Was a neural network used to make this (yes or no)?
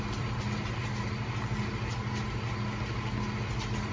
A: no